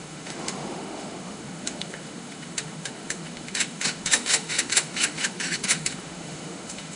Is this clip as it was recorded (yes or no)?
no